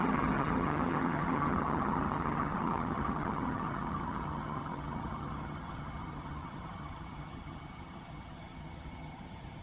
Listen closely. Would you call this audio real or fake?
fake